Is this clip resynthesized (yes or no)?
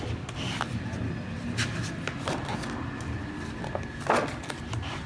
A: no